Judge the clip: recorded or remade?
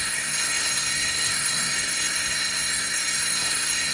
remade